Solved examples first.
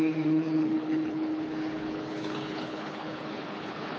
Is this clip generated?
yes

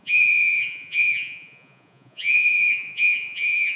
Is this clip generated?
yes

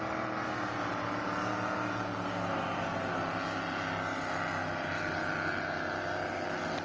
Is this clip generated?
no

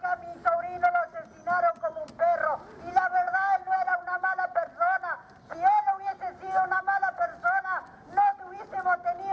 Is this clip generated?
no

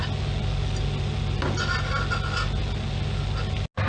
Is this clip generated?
no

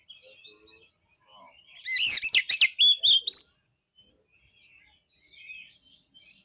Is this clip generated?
no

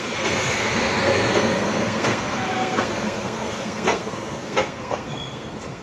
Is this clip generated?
yes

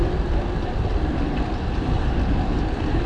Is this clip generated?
no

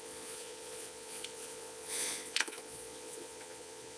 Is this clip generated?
yes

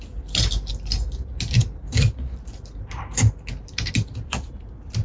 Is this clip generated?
no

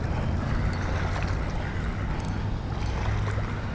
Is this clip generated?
no